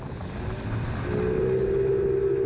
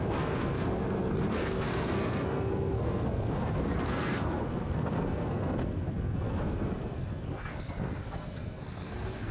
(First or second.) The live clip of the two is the first